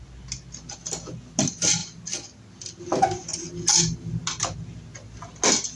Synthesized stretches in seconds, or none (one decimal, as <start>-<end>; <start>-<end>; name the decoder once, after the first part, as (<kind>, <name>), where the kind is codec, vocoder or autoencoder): none